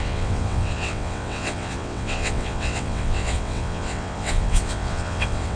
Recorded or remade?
remade